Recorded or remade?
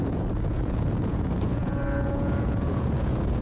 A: remade